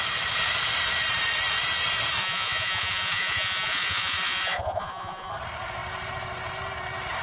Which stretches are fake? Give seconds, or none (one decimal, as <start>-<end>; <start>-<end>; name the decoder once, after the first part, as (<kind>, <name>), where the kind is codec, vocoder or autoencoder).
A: 2.2-5.3 (vocoder, Vocos)